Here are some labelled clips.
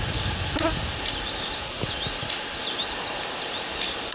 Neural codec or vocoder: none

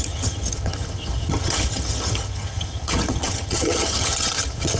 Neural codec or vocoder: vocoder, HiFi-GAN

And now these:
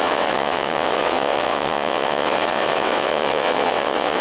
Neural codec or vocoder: vocoder, WaveNeXt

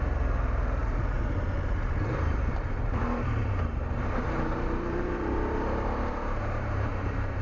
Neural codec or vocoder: vocoder, BigVGAN v2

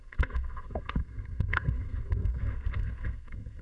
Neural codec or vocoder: codec, SNAC